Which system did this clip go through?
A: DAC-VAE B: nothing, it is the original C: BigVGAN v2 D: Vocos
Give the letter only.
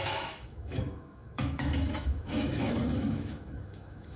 A